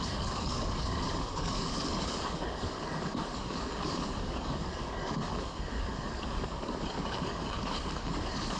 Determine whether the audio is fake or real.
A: fake